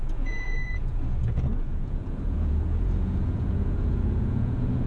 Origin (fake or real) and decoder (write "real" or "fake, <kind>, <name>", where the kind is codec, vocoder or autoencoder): fake, vocoder, Vocos